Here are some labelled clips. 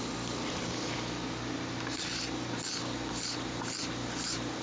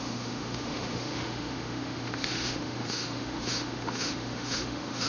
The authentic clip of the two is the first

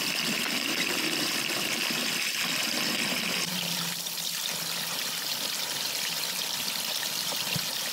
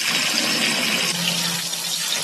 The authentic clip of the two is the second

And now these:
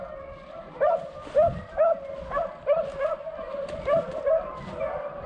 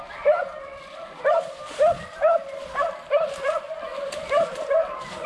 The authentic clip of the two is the first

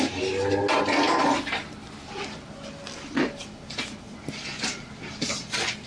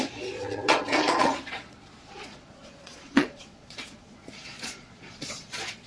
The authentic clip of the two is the first